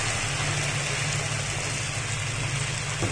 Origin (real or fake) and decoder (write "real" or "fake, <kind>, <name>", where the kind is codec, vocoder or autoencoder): real